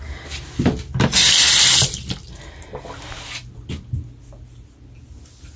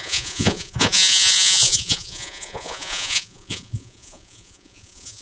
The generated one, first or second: second